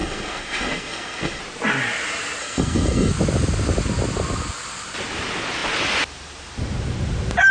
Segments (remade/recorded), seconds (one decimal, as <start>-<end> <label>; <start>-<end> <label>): 0.0-1.4 remade; 1.4-2.4 recorded; 2.4-3.1 remade; 3.1-7.5 recorded